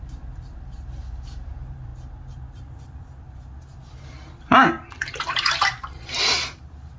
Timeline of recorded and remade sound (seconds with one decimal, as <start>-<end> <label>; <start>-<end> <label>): 0.0-1.9 remade; 1.9-5.2 recorded; 5.2-7.0 remade